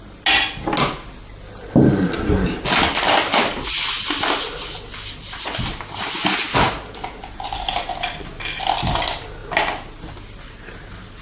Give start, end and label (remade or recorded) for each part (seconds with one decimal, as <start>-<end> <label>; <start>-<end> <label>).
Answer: 0.0-11.2 recorded